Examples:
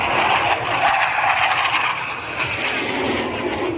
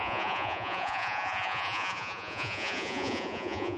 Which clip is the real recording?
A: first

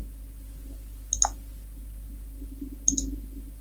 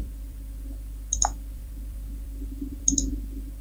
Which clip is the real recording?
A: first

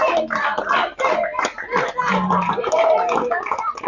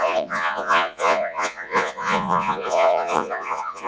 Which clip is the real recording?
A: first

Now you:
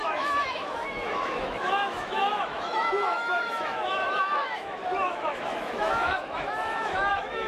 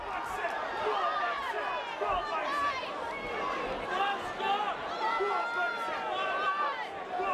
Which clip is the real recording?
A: second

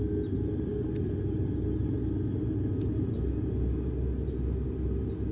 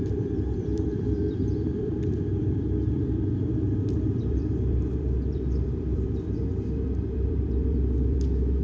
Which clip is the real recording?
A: first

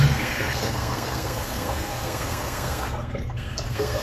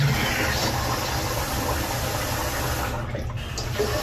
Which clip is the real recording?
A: second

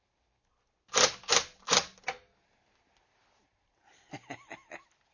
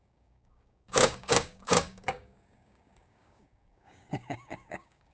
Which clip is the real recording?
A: first